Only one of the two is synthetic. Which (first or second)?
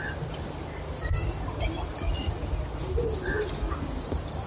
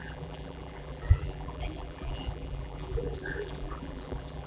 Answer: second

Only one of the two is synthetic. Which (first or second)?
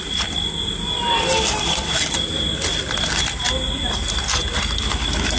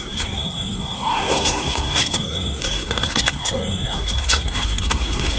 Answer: second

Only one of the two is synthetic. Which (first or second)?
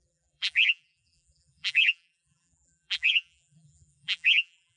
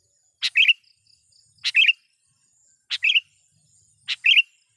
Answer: first